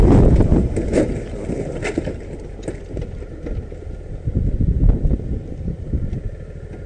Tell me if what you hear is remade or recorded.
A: recorded